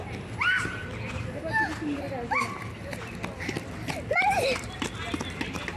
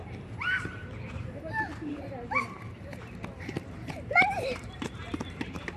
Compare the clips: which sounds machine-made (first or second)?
second